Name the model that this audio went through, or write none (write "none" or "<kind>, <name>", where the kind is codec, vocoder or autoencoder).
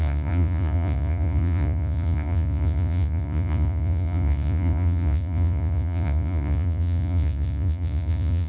vocoder, Vocos